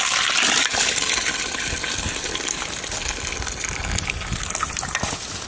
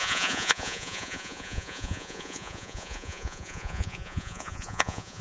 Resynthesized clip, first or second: second